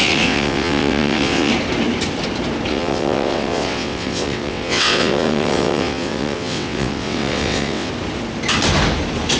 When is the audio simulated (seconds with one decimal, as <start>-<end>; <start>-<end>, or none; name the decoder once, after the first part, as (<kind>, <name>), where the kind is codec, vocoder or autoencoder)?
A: 0.0-1.5 (vocoder, WaveNeXt); 2.7-7.9